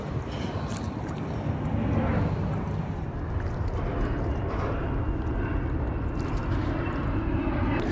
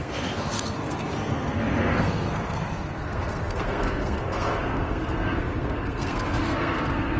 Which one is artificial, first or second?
second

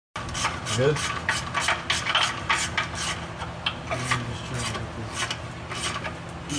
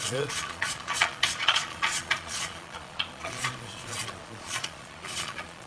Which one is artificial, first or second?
second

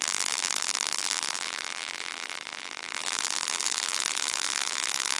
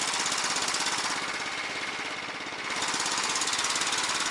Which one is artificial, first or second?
first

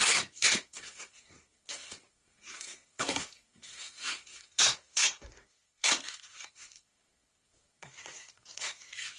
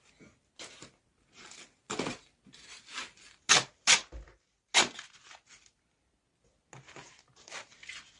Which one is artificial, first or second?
first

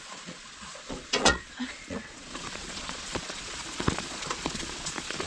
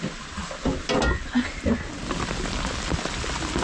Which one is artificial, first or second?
first